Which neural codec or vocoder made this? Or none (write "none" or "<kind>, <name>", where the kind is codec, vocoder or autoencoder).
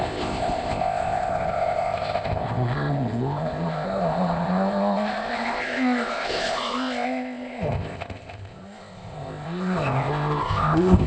codec, ZipCodec